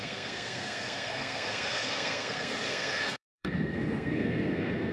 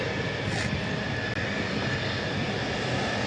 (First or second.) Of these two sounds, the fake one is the first